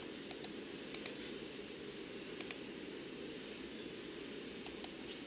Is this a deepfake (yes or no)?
no